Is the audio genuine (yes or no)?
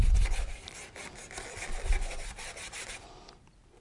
yes